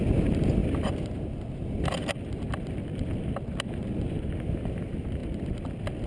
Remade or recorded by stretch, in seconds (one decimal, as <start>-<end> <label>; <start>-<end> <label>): 0.0-6.1 recorded